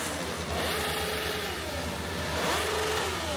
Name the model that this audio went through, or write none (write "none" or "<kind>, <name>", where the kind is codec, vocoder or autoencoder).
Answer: none